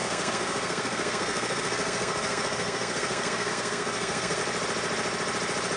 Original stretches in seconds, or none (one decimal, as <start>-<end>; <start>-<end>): 4.4-5.8